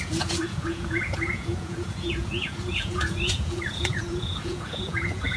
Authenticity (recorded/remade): remade